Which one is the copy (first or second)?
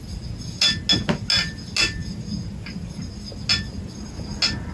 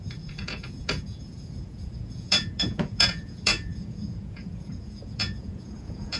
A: second